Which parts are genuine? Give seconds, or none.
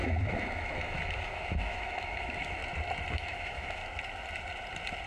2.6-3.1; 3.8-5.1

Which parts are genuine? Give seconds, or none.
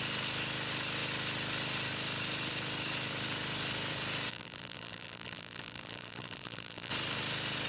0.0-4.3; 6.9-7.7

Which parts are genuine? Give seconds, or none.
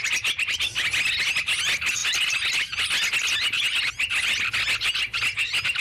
0.0-5.8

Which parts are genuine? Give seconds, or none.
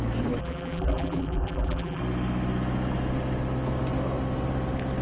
0.0-0.4; 2.0-5.0